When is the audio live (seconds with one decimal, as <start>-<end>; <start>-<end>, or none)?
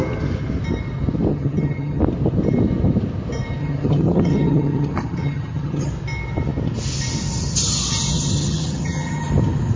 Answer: 0.0-1.3; 2.0-3.6; 5.9-8.1; 9.3-9.8